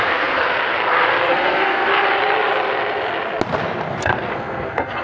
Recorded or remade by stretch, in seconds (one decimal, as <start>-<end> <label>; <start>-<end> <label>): 0.0-0.4 remade; 0.4-1.3 recorded; 1.3-1.9 remade; 1.9-3.9 recorded; 3.9-5.0 remade